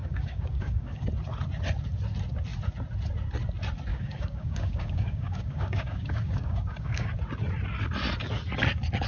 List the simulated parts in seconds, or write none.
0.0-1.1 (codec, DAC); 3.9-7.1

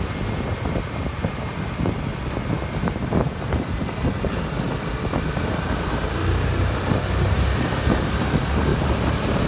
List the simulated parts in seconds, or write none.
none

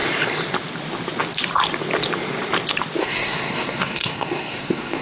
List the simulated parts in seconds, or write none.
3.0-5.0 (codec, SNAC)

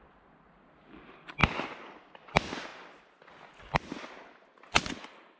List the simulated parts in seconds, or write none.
none